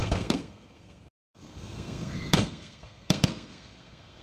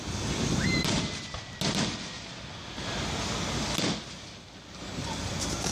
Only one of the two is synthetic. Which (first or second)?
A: first